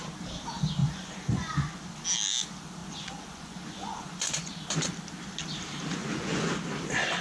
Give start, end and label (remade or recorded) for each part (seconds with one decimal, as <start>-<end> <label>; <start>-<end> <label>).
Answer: 0.0-0.8 recorded; 0.8-1.8 remade; 1.8-2.8 recorded; 2.8-4.5 remade; 4.5-6.0 recorded; 6.0-6.5 remade; 6.5-7.2 recorded